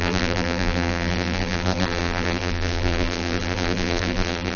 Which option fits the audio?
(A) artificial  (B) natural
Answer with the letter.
A